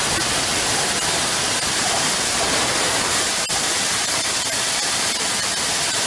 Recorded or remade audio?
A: recorded